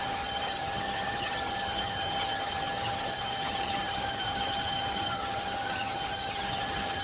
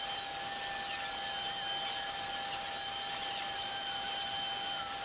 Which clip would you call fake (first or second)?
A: first